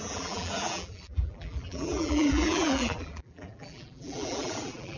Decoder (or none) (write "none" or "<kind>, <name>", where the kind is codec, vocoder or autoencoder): vocoder, BigVGAN v2